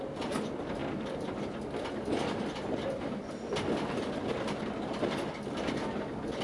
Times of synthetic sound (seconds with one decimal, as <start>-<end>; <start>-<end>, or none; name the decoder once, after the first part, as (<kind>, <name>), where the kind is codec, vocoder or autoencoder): none

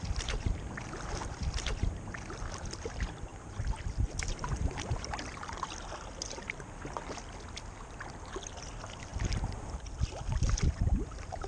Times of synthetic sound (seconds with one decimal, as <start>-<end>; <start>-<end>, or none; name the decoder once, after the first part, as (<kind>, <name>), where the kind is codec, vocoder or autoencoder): 0.0-11.5 (vocoder, BigVGAN v2)

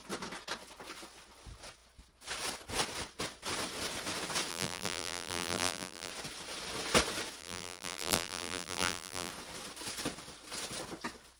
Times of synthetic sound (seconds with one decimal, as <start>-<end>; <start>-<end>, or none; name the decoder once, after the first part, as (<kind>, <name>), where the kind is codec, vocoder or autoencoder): 4.5-6.1 (vocoder, BigVGAN v2); 7.4-9.3

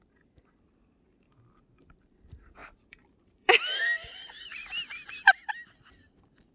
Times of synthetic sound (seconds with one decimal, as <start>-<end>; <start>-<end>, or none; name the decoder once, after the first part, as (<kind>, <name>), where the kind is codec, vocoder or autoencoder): 2.6-5.5 (vocoder, BigVGAN v2)

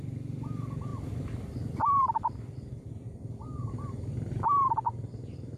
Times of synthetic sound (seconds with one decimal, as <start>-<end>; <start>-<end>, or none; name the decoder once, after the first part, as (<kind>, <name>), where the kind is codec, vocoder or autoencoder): none

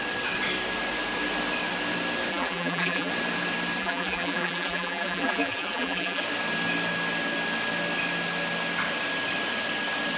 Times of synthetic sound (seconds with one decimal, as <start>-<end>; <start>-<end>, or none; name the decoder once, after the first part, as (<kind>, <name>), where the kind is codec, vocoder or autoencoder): 2.3-3.1 (vocoder, BigVGAN v2); 3.8-6.2